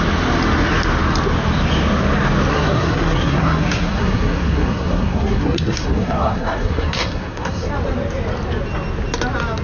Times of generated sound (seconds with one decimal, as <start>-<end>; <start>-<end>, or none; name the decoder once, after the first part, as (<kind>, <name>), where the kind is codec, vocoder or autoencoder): 2.5-7.7 (codec, SNAC)